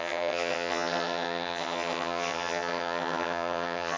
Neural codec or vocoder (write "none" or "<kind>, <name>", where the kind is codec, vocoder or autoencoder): vocoder, HiFi-GAN